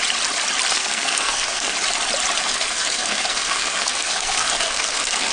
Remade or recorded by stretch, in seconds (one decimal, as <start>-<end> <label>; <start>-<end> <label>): 0.0-0.7 recorded; 0.7-1.7 remade; 1.7-2.4 recorded; 2.4-5.3 remade